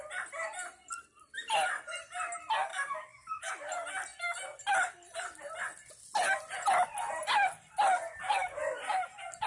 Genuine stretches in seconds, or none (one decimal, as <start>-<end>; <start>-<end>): 0.0-2.7; 3.5-9.5